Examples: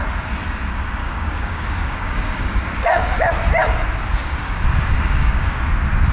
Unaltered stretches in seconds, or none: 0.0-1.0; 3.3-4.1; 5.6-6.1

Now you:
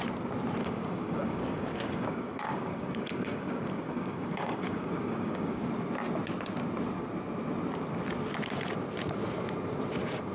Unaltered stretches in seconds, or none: 0.0-0.6; 5.7-10.3

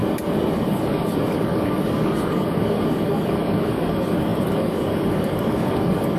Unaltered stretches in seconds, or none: none

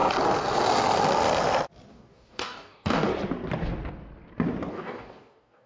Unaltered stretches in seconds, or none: 0.0-1.9; 3.1-4.7

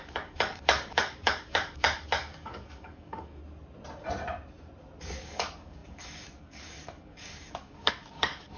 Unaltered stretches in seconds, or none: 3.4-5.0

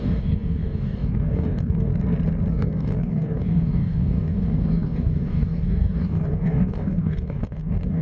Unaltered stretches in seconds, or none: 1.9-2.5